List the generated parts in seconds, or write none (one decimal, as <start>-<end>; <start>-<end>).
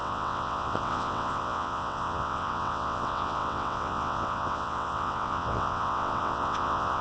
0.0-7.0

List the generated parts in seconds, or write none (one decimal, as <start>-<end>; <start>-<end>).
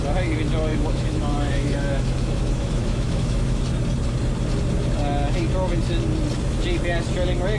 0.7-3.6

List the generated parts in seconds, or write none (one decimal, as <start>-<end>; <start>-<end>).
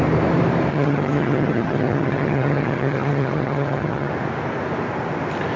0.7-4.1